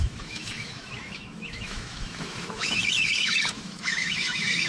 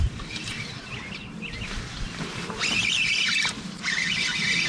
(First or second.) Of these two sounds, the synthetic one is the first